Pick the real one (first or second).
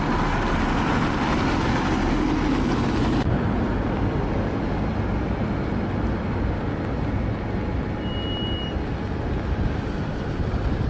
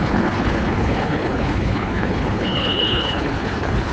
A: first